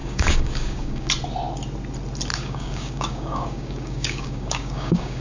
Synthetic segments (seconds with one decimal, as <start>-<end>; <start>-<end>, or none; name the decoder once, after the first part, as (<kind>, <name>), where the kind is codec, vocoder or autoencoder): 0.0-1.1 (codec, DAC); 2.3-5.2